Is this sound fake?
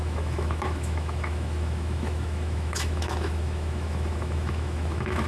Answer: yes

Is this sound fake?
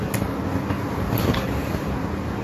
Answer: no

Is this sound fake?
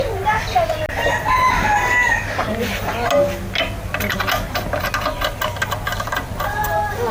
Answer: no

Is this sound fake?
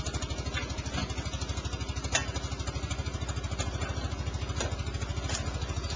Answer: no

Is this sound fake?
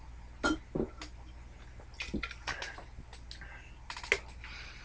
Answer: no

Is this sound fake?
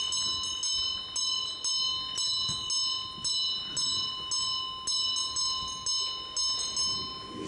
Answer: no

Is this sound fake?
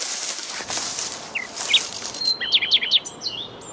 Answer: no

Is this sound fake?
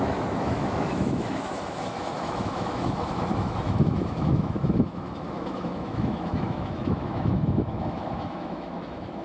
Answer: yes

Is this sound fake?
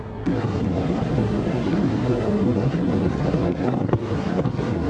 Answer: yes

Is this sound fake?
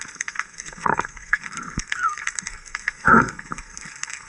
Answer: yes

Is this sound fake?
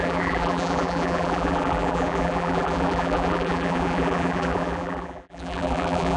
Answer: yes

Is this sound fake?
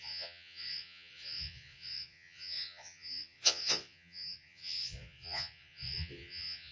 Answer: yes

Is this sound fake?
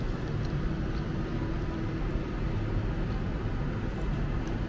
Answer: no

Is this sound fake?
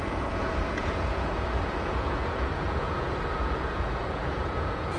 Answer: yes